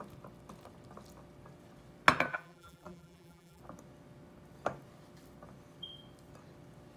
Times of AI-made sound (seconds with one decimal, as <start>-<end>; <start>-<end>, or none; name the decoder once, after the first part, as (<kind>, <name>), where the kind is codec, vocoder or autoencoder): 2.3-3.6 (vocoder, BigVGAN v2)